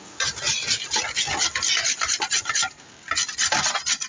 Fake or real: real